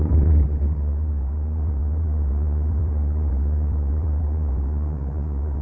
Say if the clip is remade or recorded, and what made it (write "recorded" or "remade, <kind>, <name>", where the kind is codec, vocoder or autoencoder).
remade, vocoder, WaveNeXt